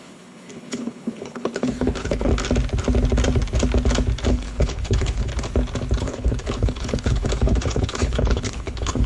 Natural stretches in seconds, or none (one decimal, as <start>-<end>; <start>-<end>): 2.3-4.3; 5.3-6.0